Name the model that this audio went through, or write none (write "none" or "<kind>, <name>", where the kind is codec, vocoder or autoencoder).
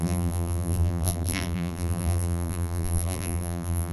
vocoder, BigVGAN v2